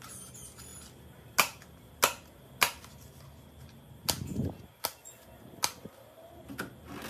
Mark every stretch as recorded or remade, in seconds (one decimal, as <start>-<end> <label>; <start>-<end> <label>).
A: 0.0-7.1 recorded